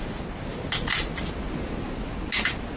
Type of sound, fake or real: real